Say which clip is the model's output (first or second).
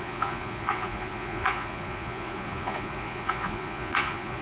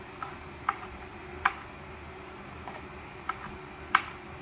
first